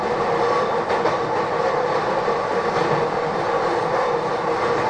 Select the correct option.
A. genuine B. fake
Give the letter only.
A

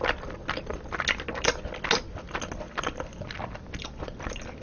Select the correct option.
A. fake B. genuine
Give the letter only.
B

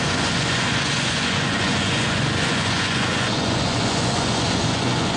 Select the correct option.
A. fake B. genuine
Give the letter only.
A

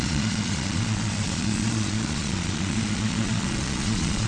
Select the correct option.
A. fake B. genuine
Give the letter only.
A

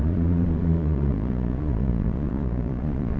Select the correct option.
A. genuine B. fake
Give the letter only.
B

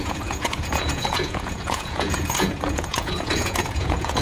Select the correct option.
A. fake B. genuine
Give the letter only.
A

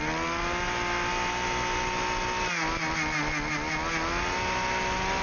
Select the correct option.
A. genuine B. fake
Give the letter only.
A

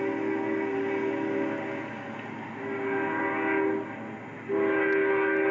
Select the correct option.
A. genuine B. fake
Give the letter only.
A